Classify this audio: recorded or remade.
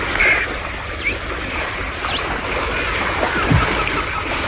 recorded